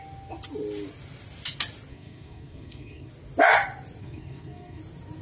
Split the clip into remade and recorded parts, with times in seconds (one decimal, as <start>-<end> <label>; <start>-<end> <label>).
0.0-1.9 recorded; 1.9-3.1 remade; 3.1-4.0 recorded; 4.0-4.8 remade; 4.8-5.2 recorded